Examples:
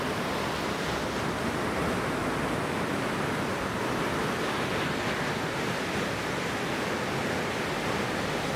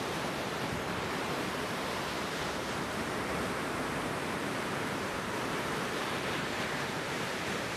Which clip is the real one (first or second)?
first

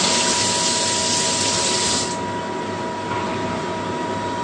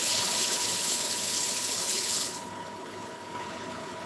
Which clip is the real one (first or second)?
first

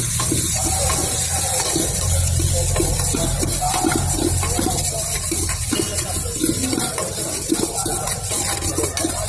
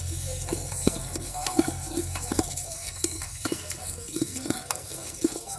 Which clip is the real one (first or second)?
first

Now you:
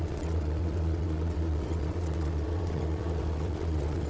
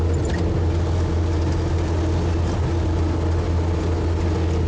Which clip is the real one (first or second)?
second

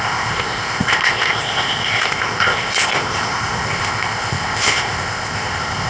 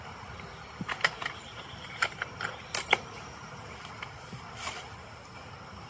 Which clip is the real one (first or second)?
second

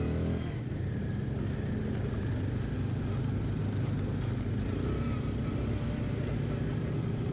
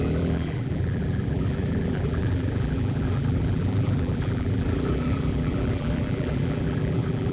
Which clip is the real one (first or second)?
first